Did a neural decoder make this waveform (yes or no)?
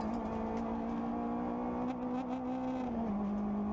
no